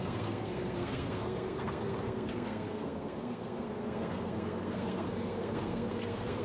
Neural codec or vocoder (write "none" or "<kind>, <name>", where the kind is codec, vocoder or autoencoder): codec, SNAC